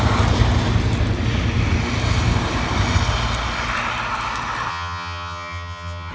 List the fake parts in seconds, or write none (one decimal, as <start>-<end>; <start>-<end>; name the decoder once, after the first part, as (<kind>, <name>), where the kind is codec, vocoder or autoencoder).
4.7-6.1 (vocoder, HiFi-GAN)